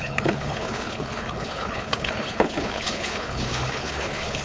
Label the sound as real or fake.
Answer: fake